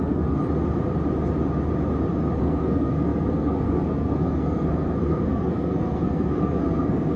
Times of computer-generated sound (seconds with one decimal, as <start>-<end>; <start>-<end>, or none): 0.0-0.4; 2.4-7.2